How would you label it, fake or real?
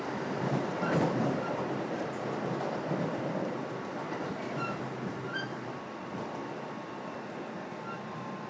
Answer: fake